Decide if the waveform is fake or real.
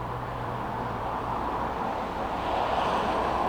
fake